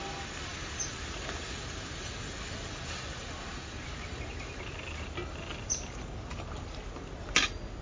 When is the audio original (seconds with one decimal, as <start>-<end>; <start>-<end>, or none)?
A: 0.0-7.8